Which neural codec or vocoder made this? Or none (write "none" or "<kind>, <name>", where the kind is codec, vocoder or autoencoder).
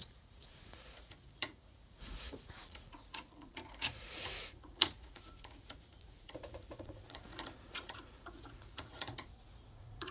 vocoder, Vocos